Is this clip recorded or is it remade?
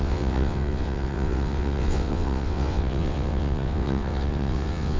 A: remade